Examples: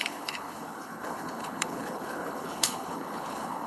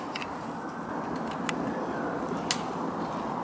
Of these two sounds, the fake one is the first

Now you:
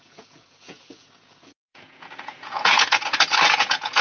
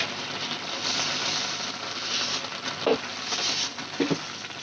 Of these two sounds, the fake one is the first